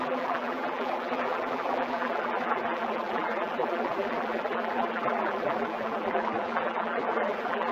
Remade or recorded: remade